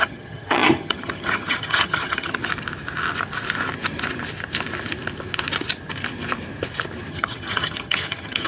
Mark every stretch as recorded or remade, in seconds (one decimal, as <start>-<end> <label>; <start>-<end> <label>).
0.0-2.4 remade; 2.4-7.1 recorded; 7.1-8.5 remade